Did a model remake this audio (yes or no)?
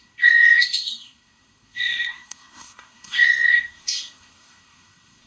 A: yes